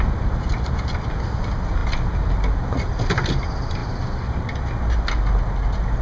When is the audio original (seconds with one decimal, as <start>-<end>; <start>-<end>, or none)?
0.0-6.0